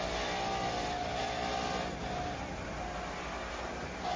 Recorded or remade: recorded